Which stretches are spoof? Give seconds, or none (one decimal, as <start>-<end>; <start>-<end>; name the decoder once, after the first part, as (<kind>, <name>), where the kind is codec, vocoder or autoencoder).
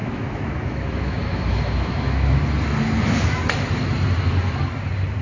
0.0-2.4 (autoencoder, DAC-VAE)